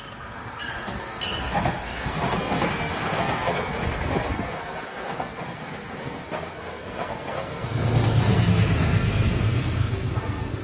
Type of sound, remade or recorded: remade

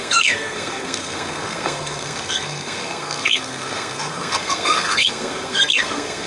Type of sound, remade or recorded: remade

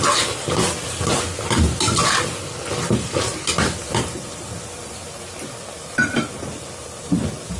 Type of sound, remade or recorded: recorded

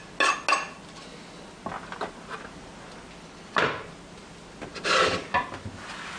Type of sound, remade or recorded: recorded